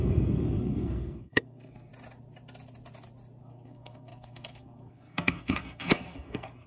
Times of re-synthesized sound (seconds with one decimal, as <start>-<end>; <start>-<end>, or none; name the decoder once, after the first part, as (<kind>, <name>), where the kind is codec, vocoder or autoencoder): 0.0-1.9 (codec, SNAC); 3.4-6.7